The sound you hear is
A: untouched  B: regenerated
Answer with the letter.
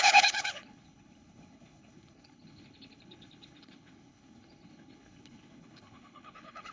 B